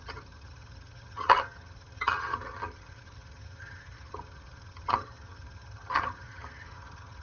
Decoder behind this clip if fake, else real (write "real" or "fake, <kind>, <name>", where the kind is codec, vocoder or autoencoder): fake, vocoder, HiFi-GAN